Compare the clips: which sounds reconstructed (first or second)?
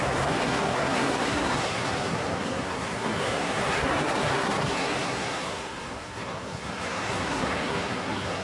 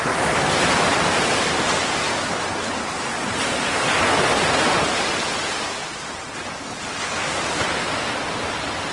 first